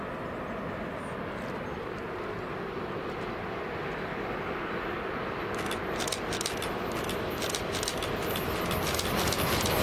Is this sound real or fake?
real